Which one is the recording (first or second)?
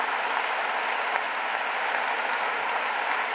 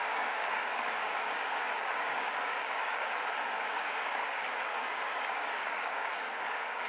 first